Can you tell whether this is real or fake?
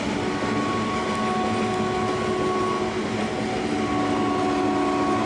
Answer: real